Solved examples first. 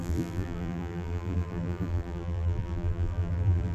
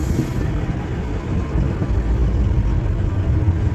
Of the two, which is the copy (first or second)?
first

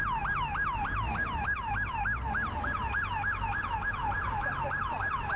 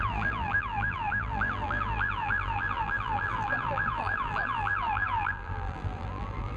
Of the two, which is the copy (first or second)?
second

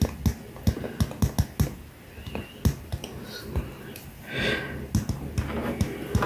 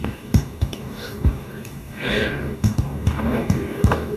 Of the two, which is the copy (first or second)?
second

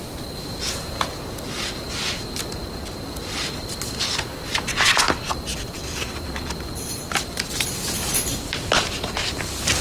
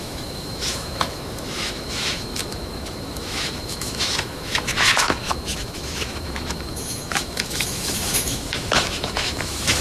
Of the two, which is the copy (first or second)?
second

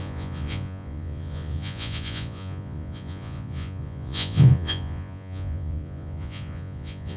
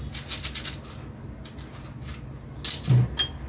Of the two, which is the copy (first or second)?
first